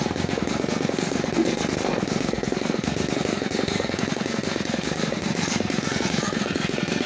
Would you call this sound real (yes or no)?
no